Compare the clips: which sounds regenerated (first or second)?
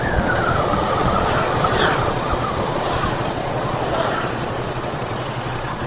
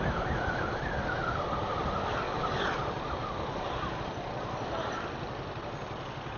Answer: first